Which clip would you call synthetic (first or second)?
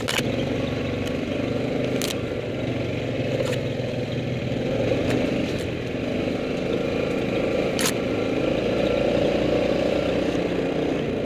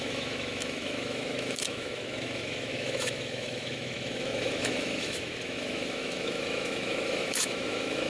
second